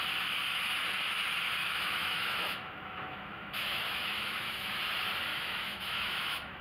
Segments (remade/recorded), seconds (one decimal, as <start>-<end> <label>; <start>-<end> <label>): 0.0-1.6 recorded; 1.6-4.8 remade; 4.8-5.3 recorded; 5.3-6.6 remade